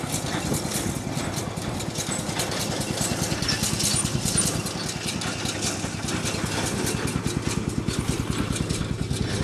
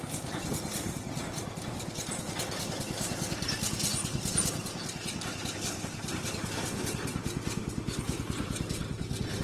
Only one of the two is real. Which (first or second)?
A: first